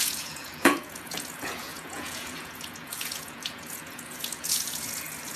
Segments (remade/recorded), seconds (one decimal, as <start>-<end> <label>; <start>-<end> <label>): 0.0-5.4 remade